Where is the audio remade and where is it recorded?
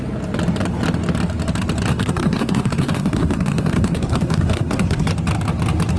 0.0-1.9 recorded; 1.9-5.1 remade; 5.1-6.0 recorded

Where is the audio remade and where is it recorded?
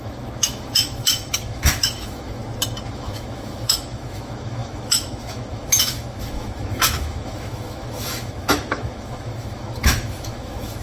0.0-2.4 remade; 2.4-2.9 recorded; 2.9-10.8 remade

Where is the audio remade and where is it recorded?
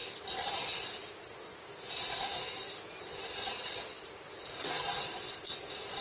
0.0-0.8 remade; 0.8-1.5 recorded; 1.5-2.6 remade; 2.6-3.2 recorded; 3.2-4.3 remade; 4.3-6.0 recorded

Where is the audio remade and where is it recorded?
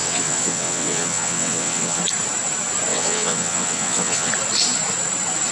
0.0-2.0 remade; 2.0-2.9 recorded; 2.9-4.3 remade; 4.3-5.5 recorded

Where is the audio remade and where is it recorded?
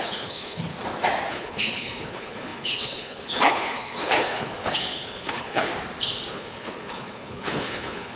0.0-0.7 remade; 0.7-1.3 recorded; 1.3-5.7 remade; 5.7-6.3 recorded; 6.3-8.2 remade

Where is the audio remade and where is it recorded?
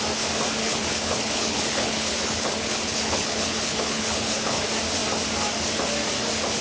0.0-0.6 recorded; 0.6-4.6 remade; 4.6-6.6 recorded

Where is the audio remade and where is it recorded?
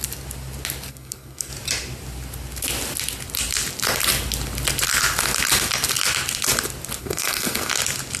0.0-0.9 recorded; 0.9-1.5 remade; 1.5-7.0 recorded; 7.0-7.7 remade; 7.7-8.2 recorded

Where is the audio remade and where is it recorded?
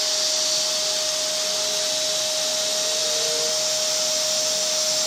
0.0-3.0 recorded; 3.0-3.5 remade; 3.5-5.1 recorded